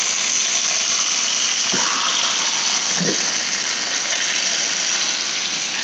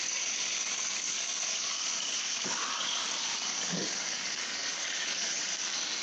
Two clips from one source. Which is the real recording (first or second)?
first